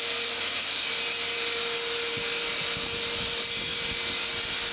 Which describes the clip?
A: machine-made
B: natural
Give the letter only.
A